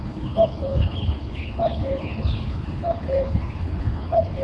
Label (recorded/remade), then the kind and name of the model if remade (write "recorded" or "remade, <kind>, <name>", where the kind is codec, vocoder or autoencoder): remade, codec, HILCodec